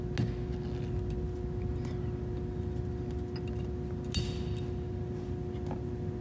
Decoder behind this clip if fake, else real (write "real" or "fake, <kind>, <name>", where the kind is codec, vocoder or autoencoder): real